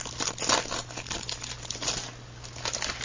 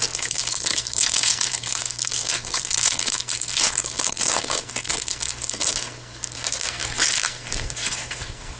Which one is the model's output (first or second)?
second